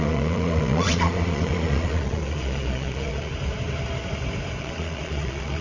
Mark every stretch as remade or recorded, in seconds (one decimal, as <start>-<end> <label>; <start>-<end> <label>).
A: 0.0-3.3 remade; 3.3-4.6 recorded; 4.6-5.6 remade